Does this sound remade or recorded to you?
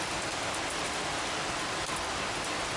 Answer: recorded